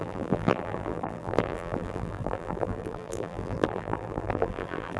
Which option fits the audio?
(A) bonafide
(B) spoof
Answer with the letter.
B